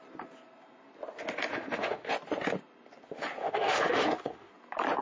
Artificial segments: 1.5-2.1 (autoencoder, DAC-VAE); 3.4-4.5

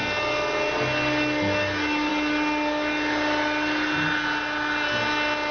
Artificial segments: none

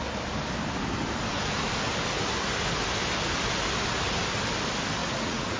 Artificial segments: 5.0-5.6 (vocoder, Vocos)

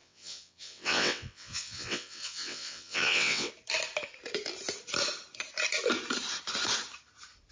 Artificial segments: 0.0-3.5 (vocoder, WaveNeXt)